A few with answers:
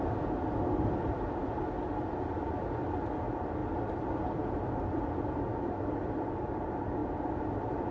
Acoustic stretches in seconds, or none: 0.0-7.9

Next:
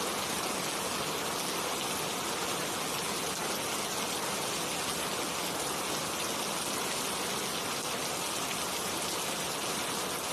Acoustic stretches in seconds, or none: 0.0-10.3

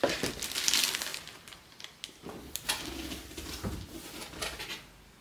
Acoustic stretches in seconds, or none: 0.0-5.2

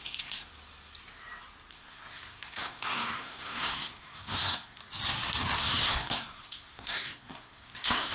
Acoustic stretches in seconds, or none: 0.5-1.7; 4.8-5.6